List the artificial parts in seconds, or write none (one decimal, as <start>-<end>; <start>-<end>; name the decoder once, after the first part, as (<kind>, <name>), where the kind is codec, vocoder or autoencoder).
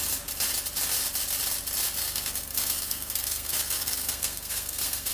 2.0-5.1 (codec, SNAC)